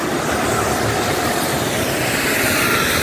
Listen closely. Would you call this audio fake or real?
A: real